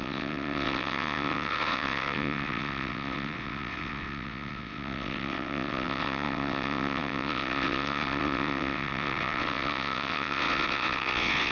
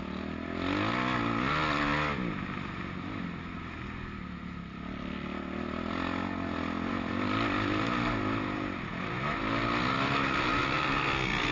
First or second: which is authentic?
second